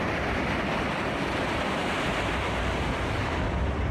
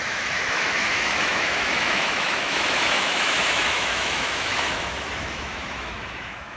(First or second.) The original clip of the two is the first